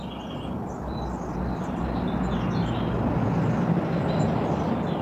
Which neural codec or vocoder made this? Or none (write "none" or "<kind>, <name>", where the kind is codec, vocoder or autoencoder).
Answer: none